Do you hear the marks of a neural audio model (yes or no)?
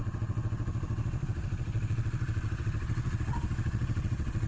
yes